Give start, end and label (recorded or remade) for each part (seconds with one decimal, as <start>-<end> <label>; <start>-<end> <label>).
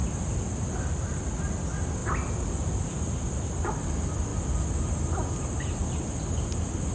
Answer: 0.0-6.9 recorded